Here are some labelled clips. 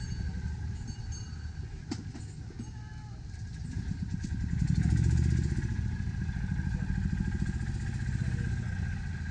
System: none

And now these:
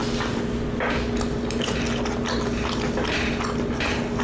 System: none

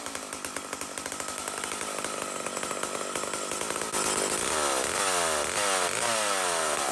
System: none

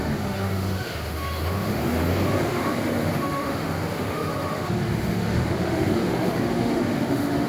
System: autoencoder, DAC-VAE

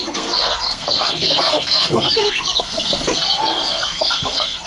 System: codec, SNAC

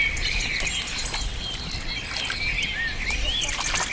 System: none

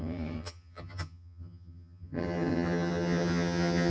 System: vocoder, HiFi-GAN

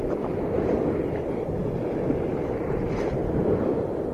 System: none